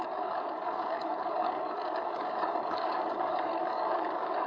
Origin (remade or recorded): remade